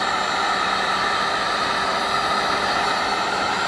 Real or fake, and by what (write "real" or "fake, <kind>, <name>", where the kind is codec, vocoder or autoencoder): fake, vocoder, BigVGAN v2